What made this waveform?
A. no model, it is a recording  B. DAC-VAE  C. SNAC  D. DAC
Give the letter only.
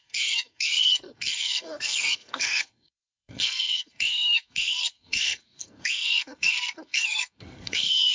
C